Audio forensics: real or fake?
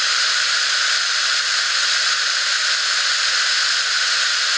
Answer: real